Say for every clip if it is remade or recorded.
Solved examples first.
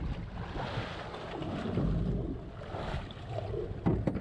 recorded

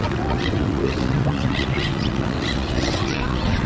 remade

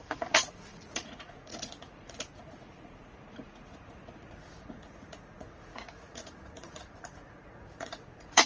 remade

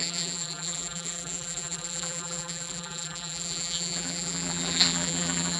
remade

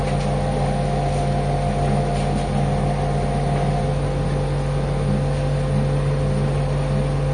recorded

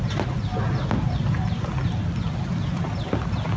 recorded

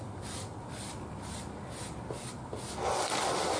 recorded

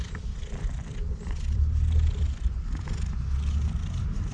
remade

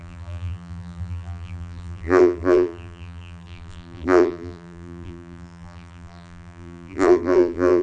remade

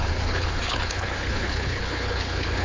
remade